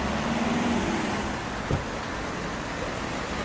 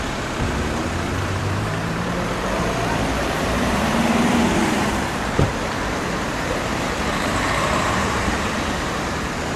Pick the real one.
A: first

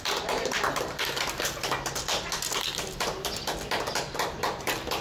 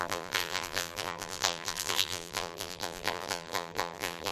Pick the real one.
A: first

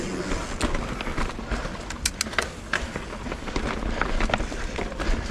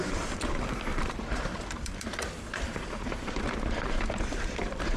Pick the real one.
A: first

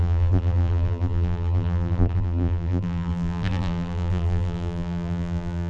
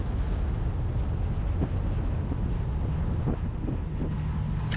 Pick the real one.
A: second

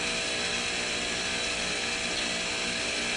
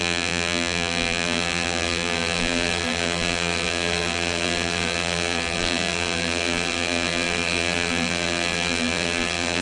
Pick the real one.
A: first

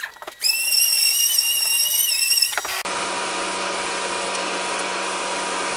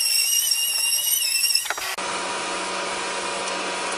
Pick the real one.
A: second